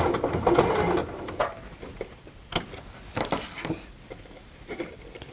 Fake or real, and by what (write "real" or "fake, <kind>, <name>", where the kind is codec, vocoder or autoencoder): fake, vocoder, BigVGAN v2